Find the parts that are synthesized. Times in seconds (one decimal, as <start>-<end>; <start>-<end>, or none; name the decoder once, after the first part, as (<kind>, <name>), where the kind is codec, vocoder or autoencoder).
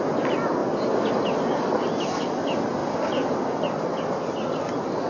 none